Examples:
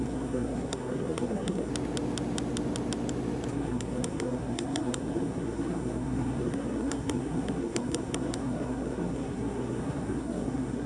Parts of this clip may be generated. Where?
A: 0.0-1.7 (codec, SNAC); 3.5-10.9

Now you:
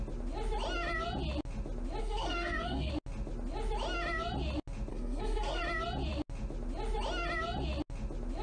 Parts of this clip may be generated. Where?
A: 2.0-2.9 (codec, SNAC); 4.9-5.6

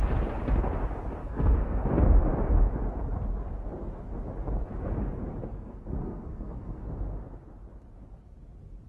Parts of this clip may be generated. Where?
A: 1.2-1.8 (codec, SNAC); 5.5-7.0

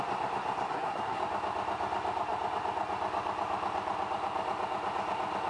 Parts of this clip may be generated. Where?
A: 0.7-1.2 (codec, SNAC)